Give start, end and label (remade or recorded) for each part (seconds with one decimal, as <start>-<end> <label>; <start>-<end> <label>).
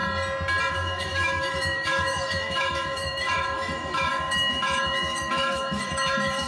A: 0.0-0.7 recorded; 0.7-6.5 remade